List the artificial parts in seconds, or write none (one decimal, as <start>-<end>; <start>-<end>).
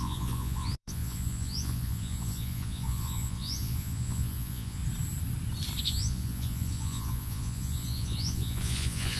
0.0-4.8; 5.8-9.2